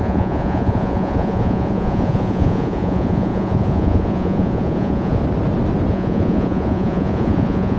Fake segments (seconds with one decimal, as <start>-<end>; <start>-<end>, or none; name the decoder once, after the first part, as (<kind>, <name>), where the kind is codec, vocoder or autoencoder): 0.0-5.2 (vocoder, Vocos); 5.9-7.8